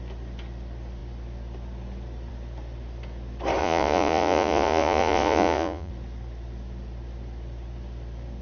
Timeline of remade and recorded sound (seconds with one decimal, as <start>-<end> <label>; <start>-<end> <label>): 0.0-3.6 recorded; 3.6-5.9 remade; 5.9-8.4 recorded